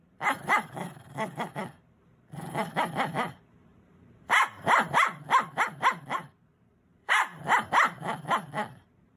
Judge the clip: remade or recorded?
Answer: remade